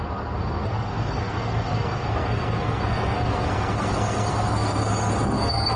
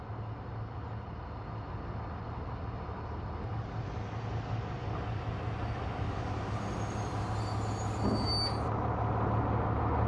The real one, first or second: second